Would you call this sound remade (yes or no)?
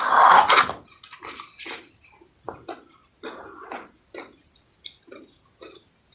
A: no